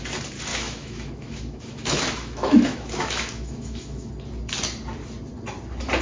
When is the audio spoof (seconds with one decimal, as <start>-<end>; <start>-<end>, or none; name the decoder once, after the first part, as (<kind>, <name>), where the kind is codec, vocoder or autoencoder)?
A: 0.5-4.1 (autoencoder, DAC-VAE)